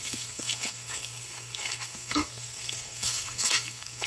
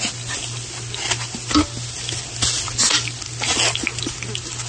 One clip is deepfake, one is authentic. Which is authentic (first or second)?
second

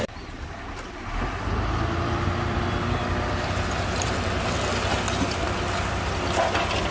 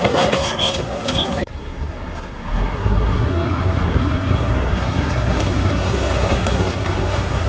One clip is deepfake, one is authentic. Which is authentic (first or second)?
first